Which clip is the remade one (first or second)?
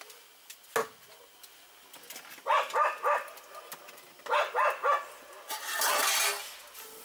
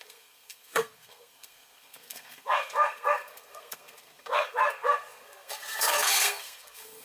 second